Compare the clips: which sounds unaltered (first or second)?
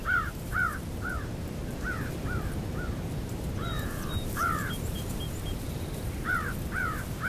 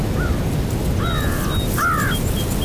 second